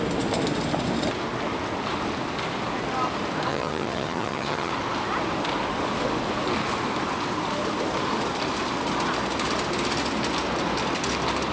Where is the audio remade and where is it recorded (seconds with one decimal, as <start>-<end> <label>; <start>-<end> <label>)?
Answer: 0.0-3.5 recorded; 3.5-4.7 remade; 4.7-11.5 recorded